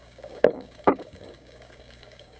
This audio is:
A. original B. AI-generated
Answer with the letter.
B